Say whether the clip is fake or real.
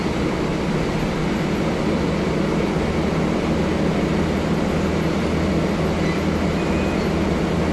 real